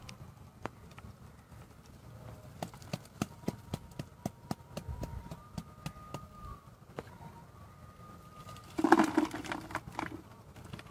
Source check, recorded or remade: recorded